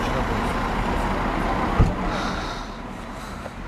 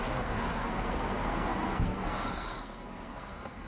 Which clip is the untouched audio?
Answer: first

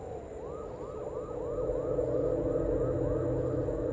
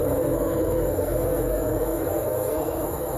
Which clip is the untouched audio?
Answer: first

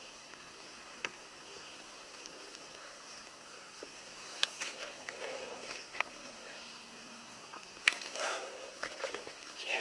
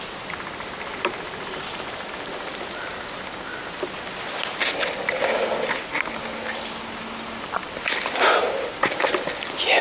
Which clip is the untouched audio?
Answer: second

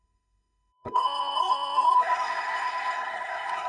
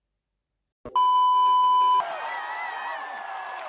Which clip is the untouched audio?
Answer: second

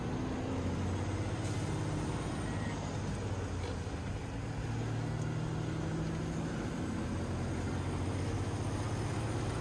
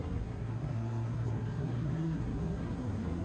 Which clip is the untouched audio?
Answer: first